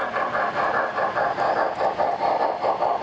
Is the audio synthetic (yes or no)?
no